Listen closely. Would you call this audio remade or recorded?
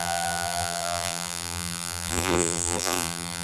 remade